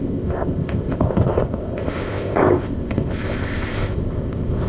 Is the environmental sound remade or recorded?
remade